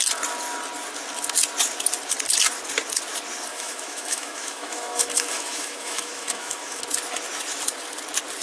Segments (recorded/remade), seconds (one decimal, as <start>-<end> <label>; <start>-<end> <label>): 0.0-3.5 recorded; 3.5-6.8 remade; 6.8-8.4 recorded